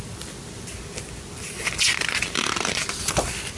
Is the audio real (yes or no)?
no